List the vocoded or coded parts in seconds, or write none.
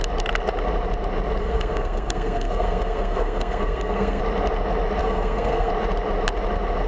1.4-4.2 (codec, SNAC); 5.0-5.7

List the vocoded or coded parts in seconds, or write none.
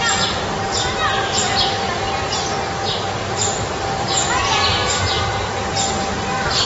3.2-4.9 (vocoder, BigVGAN v2)